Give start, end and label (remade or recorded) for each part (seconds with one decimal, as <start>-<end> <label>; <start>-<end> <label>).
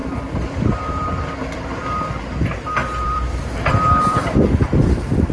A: 0.0-1.6 remade; 1.6-2.8 recorded; 2.8-5.3 remade